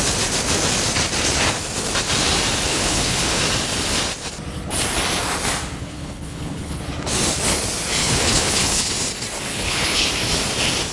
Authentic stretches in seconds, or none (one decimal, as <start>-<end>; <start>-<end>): 0.0-2.7; 3.4-5.8; 6.8-8.0; 8.9-9.5; 10.1-10.9